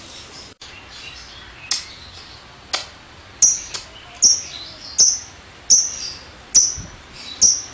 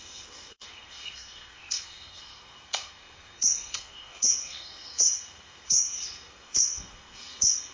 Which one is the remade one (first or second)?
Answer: second